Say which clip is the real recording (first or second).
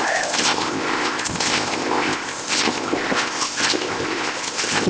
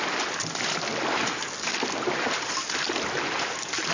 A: second